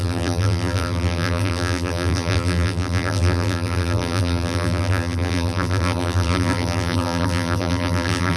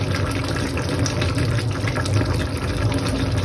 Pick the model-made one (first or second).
first